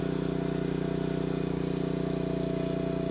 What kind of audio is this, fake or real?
real